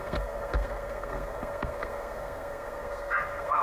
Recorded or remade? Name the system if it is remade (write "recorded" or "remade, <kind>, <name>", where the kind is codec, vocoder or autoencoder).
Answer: remade, codec, SNAC